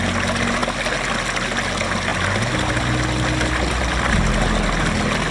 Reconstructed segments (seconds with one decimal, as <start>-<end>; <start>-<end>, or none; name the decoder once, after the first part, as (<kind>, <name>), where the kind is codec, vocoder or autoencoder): none